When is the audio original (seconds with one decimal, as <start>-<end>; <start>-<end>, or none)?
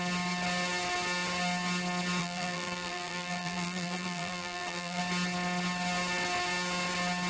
0.0-2.2; 5.0-7.3